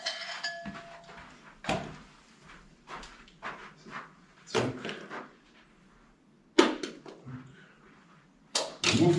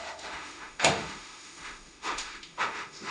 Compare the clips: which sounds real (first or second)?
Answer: first